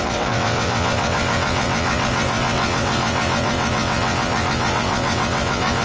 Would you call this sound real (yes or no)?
no